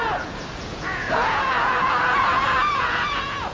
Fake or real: fake